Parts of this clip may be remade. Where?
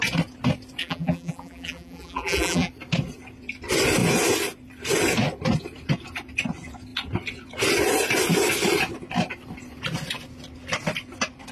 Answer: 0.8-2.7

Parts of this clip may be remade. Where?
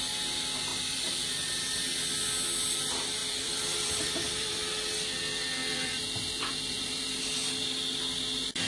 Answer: 0.7-1.8; 3.2-4.6; 5.6-7.2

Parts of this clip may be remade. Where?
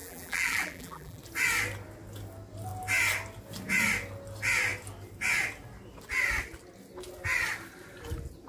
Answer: 0.0-1.2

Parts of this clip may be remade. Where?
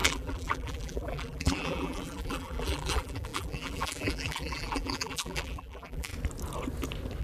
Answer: 0.0-6.1